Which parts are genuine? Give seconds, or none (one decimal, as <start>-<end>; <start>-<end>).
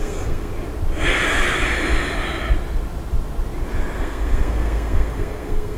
0.5-4.0